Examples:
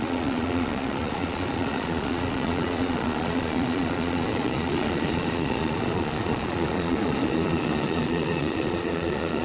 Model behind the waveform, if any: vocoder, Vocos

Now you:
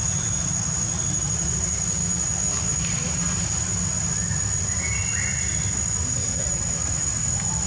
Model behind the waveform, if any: none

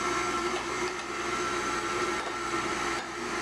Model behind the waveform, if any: none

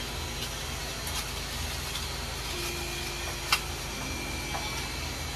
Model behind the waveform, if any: none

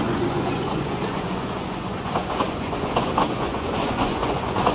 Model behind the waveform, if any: vocoder, Vocos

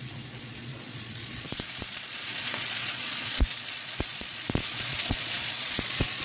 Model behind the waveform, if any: vocoder, Vocos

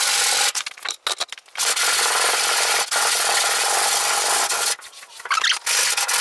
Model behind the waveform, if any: none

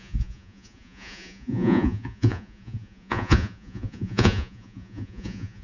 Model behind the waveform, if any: vocoder, Vocos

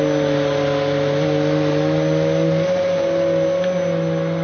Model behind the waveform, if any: none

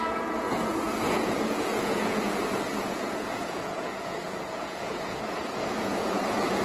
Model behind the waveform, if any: vocoder, Vocos